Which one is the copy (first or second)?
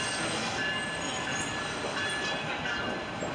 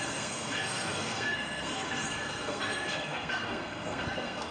second